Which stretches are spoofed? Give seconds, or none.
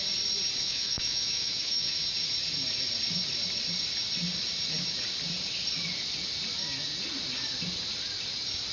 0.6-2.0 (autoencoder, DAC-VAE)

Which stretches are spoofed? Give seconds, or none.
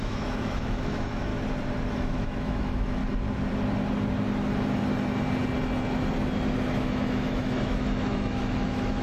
0.0-1.3 (autoencoder, DAC-VAE); 1.9-3.0; 6.7-9.0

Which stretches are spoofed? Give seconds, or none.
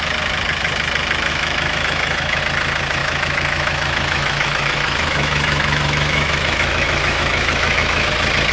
1.3-2.4 (autoencoder, DAC-VAE); 3.0-8.1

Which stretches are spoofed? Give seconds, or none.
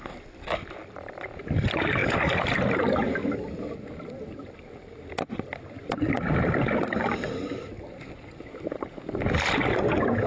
none